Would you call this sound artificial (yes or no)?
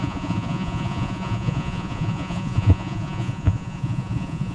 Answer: yes